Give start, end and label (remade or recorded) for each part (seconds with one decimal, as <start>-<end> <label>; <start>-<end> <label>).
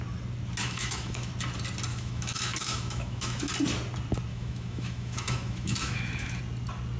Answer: 0.0-0.6 recorded; 0.6-1.3 remade; 1.3-1.9 recorded; 1.9-3.5 remade; 3.5-4.3 recorded; 4.3-6.4 remade; 6.4-7.0 recorded